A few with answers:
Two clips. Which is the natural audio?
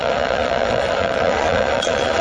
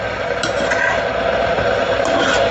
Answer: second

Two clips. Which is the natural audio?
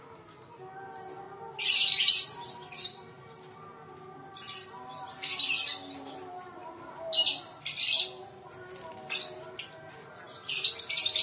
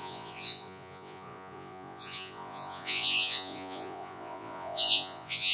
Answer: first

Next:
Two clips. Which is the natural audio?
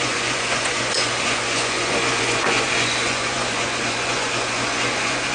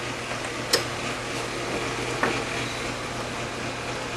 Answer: second